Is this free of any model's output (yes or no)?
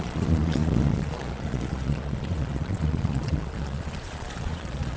no